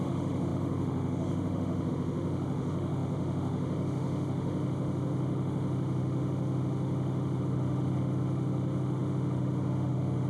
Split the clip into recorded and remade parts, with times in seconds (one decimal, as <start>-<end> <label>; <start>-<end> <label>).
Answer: 0.0-10.3 remade